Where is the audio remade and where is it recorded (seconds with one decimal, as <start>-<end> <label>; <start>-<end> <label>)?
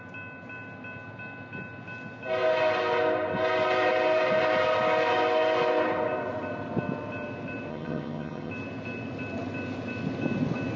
0.0-7.7 recorded; 7.7-8.5 remade; 8.5-10.8 recorded